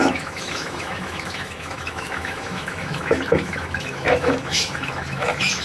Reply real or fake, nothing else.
fake